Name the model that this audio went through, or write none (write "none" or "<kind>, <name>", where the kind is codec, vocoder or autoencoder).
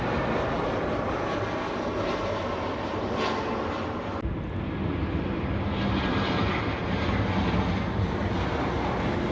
none